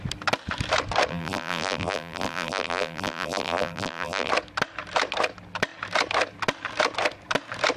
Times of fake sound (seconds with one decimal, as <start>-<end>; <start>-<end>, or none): 1.1-4.3